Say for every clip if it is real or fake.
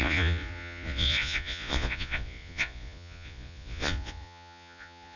fake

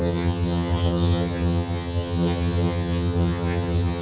fake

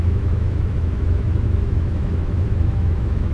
fake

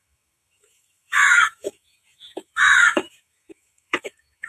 fake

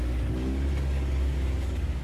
fake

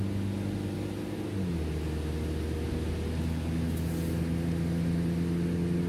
real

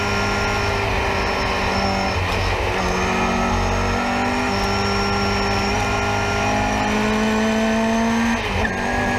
real